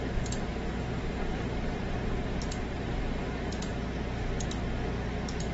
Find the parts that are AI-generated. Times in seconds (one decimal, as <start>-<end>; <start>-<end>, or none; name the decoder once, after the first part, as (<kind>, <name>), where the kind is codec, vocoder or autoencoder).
0.0-0.5 (vocoder, BigVGAN v2); 1.2-3.7